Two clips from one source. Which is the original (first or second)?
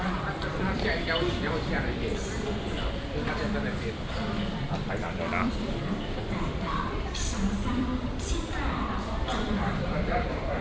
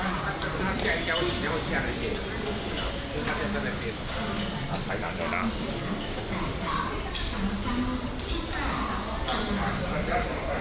second